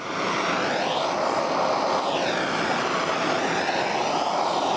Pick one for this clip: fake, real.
real